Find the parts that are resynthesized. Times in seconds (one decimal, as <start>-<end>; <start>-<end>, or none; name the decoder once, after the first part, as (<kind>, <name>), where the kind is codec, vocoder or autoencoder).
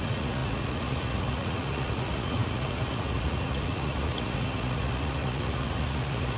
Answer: 0.0-6.4 (vocoder, Vocos)